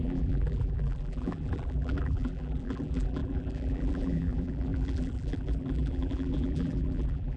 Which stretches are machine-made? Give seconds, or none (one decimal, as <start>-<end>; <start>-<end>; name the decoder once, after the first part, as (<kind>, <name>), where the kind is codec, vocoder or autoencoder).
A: 0.0-7.4 (vocoder, BigVGAN v2)